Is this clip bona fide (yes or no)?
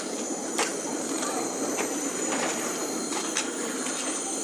no